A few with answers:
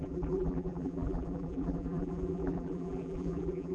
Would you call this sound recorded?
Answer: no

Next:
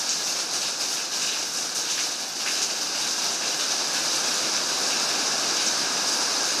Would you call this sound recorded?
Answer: yes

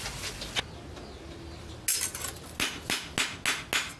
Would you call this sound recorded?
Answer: yes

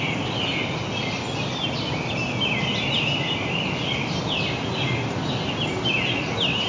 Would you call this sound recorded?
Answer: yes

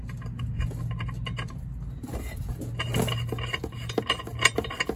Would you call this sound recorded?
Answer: yes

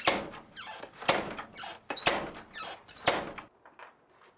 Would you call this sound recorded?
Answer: yes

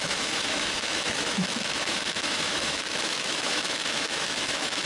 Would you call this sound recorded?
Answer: no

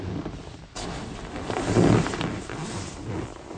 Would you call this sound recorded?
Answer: yes